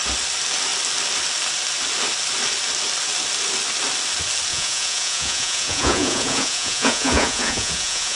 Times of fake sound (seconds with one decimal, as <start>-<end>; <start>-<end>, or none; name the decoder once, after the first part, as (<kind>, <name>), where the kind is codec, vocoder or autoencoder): 4.5-8.2 (vocoder, Vocos)